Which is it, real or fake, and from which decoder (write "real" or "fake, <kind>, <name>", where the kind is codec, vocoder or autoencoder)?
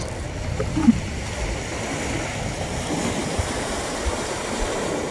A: real